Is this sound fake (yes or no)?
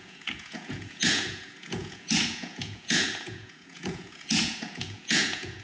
yes